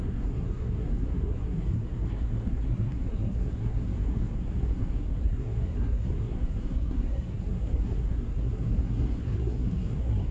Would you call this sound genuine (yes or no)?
no